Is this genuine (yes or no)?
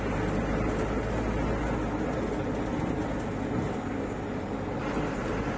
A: yes